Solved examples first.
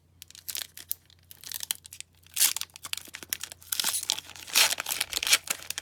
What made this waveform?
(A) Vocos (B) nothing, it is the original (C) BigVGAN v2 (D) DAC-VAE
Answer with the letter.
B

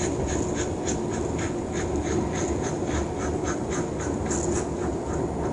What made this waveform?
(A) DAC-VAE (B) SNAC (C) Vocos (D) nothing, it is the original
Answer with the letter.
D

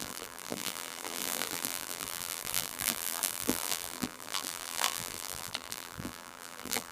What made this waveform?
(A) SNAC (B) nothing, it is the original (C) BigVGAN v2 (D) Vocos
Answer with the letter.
C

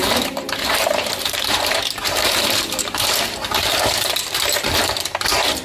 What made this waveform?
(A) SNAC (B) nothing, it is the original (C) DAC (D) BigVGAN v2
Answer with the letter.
D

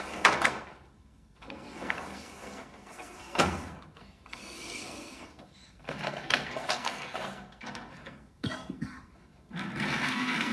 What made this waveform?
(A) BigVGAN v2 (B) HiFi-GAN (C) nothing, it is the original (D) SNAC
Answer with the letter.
D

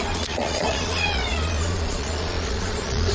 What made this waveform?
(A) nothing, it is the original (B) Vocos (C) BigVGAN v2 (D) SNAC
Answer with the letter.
B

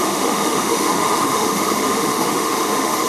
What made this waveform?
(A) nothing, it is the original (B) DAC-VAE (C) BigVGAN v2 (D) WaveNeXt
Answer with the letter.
B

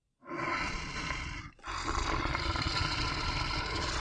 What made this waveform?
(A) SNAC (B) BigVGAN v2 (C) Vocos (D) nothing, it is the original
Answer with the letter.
D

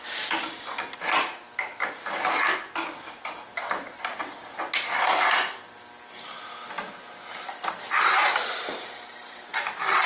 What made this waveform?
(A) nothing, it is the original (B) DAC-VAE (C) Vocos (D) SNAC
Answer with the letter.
A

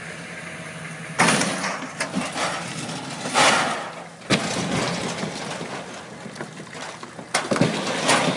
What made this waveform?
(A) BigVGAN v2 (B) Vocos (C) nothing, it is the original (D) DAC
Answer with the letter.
C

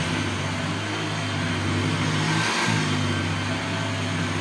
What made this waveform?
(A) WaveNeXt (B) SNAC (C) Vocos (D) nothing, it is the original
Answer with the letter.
D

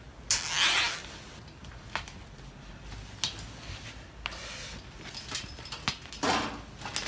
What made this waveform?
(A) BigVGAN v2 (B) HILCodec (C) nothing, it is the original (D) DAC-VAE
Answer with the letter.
C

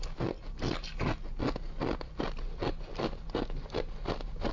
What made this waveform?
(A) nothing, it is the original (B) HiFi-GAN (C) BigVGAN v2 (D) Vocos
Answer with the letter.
A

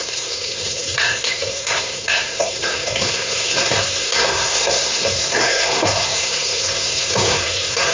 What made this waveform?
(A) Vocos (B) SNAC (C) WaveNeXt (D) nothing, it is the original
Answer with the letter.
B